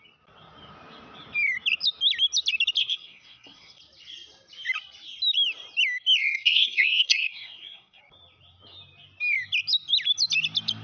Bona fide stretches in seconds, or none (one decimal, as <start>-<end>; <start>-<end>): 0.0-2.8; 3.8-6.2; 8.0-10.8